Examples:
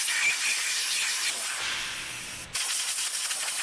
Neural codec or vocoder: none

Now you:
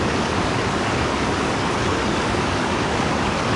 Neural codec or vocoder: codec, DAC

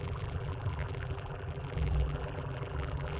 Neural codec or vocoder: vocoder, BigVGAN v2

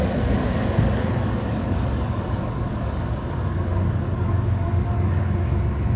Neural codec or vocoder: codec, DAC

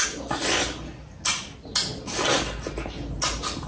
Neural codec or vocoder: none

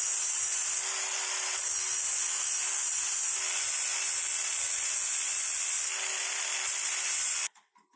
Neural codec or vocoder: none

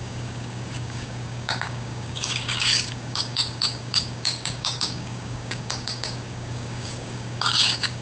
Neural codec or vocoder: codec, DAC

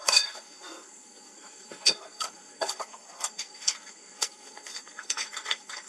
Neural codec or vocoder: codec, SNAC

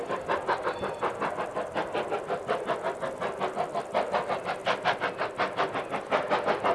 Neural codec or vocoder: none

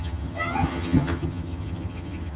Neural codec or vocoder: vocoder, HiFi-GAN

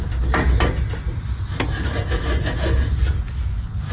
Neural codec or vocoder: none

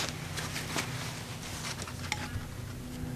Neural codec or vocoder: none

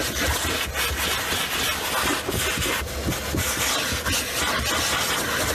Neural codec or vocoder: none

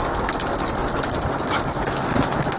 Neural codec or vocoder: none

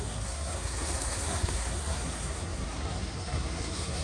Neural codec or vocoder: codec, SNAC